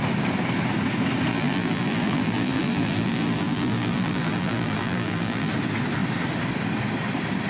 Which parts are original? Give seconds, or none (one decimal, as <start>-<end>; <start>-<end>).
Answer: 0.0-1.3; 5.5-7.5